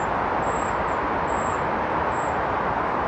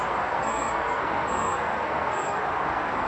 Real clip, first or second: first